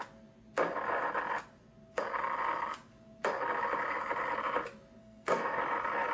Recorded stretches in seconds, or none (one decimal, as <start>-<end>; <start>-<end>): 0.0-5.0; 5.6-6.1